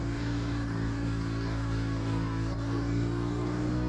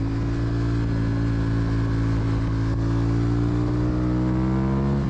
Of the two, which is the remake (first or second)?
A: first